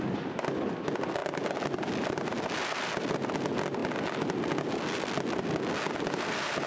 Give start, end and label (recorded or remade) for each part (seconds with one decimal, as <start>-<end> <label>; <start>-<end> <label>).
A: 0.0-6.7 recorded